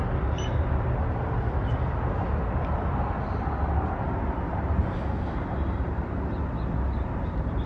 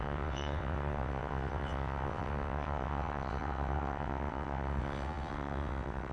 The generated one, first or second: second